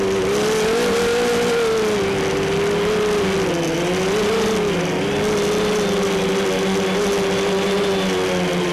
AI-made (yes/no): no